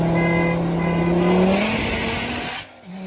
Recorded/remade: recorded